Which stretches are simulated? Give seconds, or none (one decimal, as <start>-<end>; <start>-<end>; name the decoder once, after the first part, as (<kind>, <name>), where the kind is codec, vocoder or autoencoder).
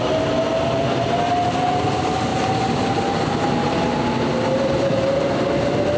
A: none